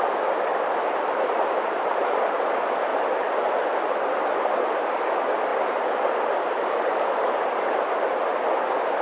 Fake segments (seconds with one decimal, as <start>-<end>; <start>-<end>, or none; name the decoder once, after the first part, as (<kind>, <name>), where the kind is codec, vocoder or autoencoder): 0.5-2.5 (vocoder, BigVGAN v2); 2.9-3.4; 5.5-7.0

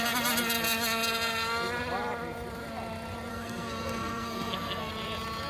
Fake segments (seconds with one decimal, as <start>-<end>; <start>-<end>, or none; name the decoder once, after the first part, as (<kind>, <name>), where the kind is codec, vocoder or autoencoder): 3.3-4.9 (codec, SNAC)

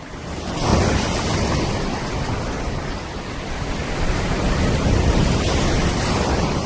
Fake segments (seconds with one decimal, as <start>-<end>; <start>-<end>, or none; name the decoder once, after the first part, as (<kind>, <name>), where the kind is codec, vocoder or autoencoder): none

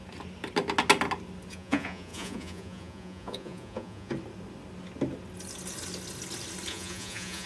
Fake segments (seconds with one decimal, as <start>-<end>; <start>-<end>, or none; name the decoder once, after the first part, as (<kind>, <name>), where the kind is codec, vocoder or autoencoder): 1.5-4.1 (vocoder, Vocos); 6.7-7.5